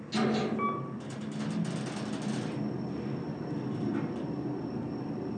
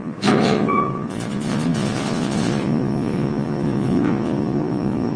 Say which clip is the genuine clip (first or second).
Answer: first